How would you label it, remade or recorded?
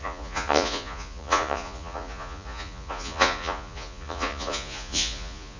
remade